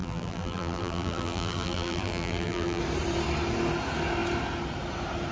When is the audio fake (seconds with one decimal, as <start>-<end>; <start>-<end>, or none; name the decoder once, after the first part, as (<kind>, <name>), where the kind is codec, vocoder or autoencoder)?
0.0-2.8 (vocoder, BigVGAN v2)